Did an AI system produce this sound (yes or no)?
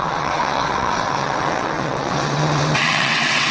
yes